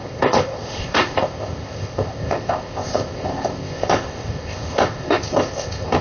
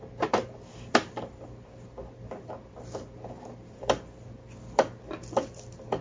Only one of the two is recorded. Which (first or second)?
second